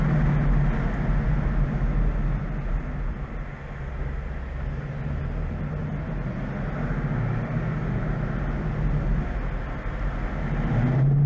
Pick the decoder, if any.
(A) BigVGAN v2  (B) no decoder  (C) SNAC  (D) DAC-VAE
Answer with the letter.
B